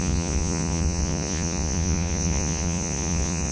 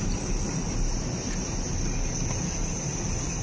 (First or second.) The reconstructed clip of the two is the first